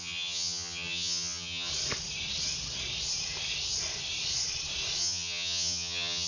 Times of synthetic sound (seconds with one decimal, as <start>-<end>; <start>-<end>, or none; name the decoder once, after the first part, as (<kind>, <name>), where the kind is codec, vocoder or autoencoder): 0.0-1.7 (vocoder, HiFi-GAN); 5.0-6.3

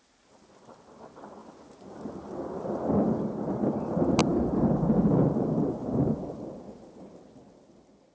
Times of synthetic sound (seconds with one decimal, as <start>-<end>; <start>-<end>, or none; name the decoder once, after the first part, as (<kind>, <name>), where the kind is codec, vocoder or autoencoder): none